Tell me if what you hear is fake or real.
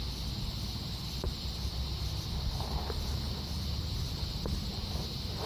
real